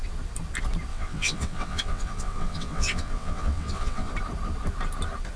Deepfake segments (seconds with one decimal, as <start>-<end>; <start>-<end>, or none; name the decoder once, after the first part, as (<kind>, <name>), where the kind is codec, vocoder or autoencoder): 0.9-4.1 (vocoder, WaveNeXt)